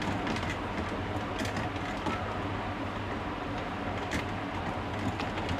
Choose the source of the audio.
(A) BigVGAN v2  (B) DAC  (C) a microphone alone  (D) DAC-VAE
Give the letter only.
C